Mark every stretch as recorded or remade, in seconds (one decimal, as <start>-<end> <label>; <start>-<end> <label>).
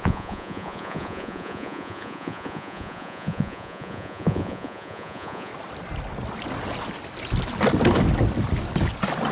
0.0-5.5 remade; 5.5-9.3 recorded